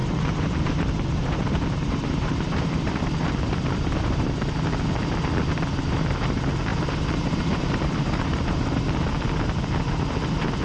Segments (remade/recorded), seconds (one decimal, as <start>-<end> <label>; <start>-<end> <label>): 0.0-4.4 remade; 4.4-6.7 recorded; 6.7-8.8 remade; 8.8-10.6 recorded